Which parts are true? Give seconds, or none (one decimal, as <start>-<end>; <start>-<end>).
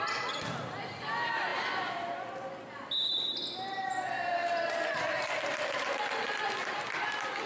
0.0-7.5